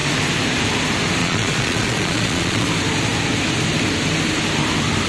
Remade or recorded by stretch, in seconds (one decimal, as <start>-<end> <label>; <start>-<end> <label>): 0.0-1.2 recorded; 1.2-2.7 remade; 2.7-5.1 recorded